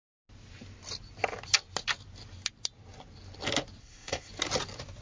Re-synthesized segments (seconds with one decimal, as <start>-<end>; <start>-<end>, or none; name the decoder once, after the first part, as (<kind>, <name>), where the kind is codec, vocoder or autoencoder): 3.8-4.3 (codec, ZipCodec)